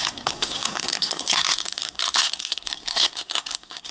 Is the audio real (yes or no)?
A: no